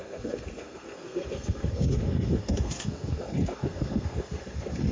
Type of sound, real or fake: fake